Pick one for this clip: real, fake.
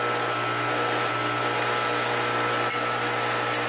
real